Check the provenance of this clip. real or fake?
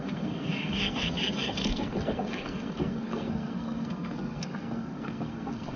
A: fake